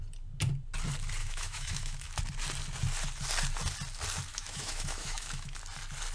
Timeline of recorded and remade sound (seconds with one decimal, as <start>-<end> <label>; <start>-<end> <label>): 0.0-1.2 recorded; 1.2-2.2 remade; 2.2-4.3 recorded; 4.3-5.6 remade; 5.6-6.1 recorded